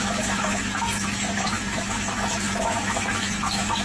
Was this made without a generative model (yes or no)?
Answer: no